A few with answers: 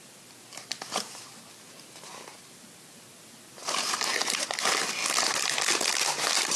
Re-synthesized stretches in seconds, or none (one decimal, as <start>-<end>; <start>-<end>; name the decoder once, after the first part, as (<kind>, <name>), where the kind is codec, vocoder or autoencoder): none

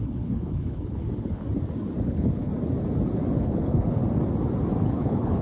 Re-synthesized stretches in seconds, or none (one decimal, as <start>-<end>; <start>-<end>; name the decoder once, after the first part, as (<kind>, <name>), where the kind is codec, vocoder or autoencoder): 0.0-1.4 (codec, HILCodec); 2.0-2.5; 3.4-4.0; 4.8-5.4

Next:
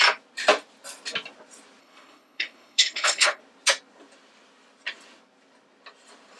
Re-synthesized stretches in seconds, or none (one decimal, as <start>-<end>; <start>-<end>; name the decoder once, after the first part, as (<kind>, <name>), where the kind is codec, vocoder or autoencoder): 1.8-3.4 (codec, HILCodec)